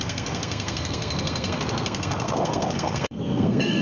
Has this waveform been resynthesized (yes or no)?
yes